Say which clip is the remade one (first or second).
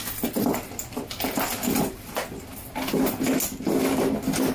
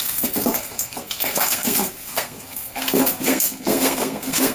second